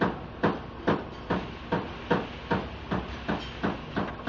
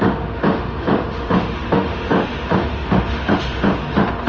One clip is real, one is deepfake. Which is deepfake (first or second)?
second